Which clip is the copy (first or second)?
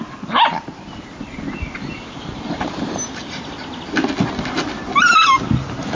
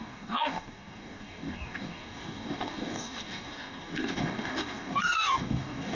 second